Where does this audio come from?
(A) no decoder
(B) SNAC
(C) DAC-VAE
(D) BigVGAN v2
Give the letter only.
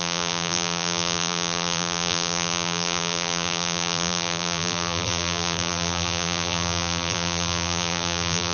D